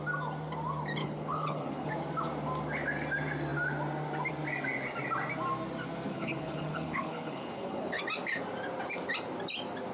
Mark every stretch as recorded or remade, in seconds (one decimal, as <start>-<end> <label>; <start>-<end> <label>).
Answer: 0.0-1.0 recorded; 1.0-1.9 remade; 1.9-6.1 recorded; 6.1-8.0 remade; 8.0-9.9 recorded